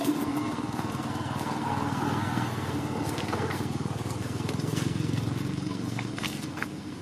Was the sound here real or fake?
fake